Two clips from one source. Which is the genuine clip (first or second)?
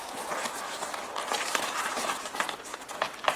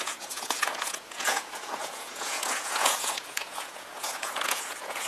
first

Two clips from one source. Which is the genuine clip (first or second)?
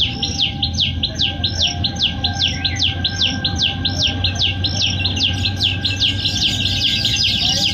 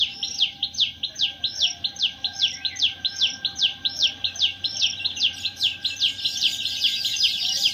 first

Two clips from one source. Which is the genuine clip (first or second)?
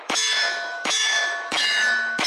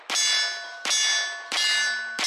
second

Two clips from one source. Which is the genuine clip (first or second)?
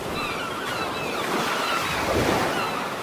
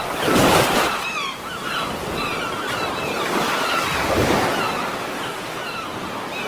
first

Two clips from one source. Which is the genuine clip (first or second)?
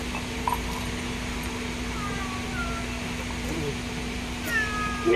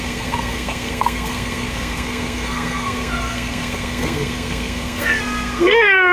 first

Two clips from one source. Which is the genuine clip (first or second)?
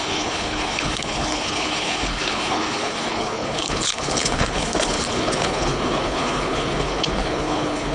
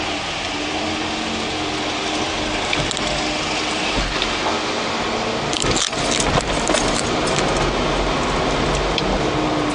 second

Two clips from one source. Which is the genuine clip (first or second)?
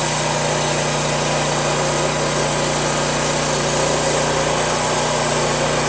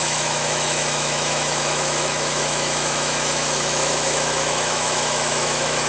first